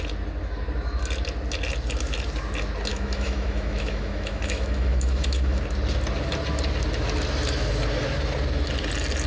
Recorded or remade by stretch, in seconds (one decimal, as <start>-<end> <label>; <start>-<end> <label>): 0.0-2.9 recorded; 2.9-5.6 remade; 5.6-9.3 recorded

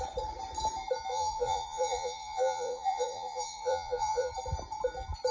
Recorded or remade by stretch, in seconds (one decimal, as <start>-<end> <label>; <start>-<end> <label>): 0.0-1.1 recorded; 1.1-4.3 remade; 4.3-5.3 recorded

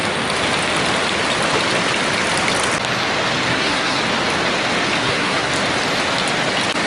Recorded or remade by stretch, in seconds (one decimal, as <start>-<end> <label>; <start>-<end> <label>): 0.0-3.5 recorded; 3.5-4.0 remade; 4.0-5.0 recorded; 5.0-5.5 remade; 5.5-6.9 recorded

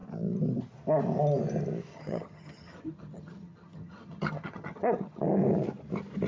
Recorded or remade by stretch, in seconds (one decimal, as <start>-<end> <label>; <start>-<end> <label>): 0.0-1.9 recorded; 1.9-5.2 remade; 5.2-6.3 recorded